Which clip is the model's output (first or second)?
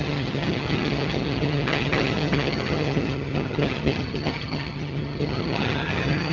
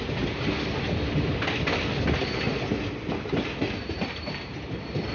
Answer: first